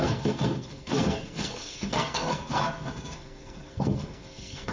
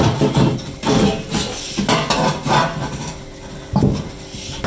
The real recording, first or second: second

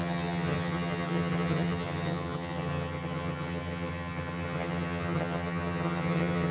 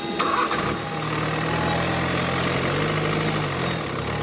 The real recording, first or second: second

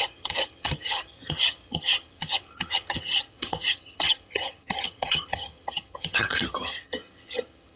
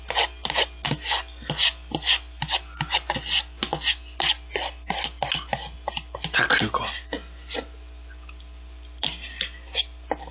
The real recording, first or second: second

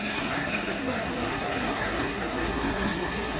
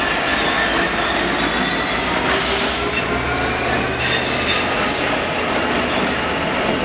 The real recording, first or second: second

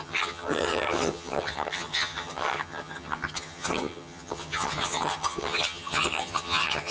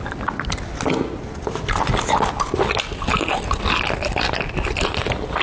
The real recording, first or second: second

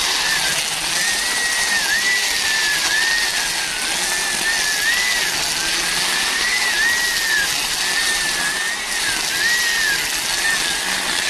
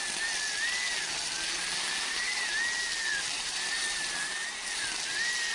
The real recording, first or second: first